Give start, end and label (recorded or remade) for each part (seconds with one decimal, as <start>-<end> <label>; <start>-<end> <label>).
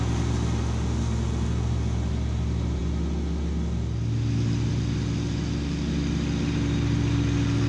0.0-7.7 recorded